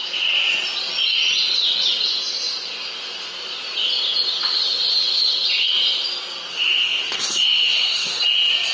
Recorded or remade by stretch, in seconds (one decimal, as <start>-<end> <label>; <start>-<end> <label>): 0.0-6.5 recorded; 6.5-8.2 remade; 8.2-8.7 recorded